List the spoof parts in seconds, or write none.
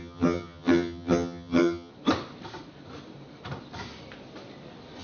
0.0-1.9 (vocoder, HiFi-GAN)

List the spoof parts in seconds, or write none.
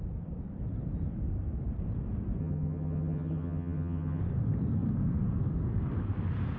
2.4-4.2 (vocoder, HiFi-GAN)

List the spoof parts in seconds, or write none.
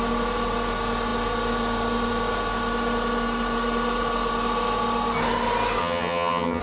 5.8-6.6 (vocoder, HiFi-GAN)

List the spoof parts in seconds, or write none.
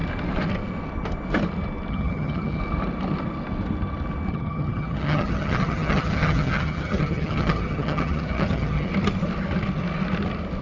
1.9-2.6 (vocoder, HiFi-GAN); 4.3-8.9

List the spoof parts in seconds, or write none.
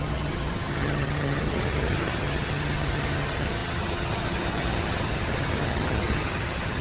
0.0-6.8 (vocoder, HiFi-GAN)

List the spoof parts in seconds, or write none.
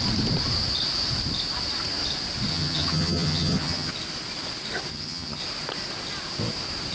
2.5-3.9 (vocoder, HiFi-GAN); 4.9-5.4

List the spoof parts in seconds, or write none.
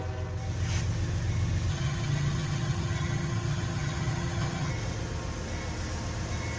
1.7-4.7 (vocoder, HiFi-GAN)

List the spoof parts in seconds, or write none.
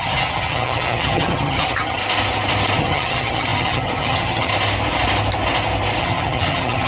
0.0-2.0 (vocoder, HiFi-GAN); 2.8-4.5; 6.0-6.9